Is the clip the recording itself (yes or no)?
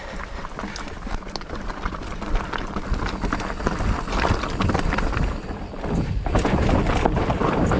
yes